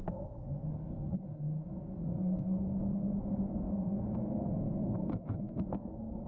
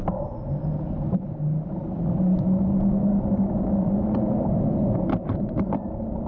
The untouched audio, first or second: second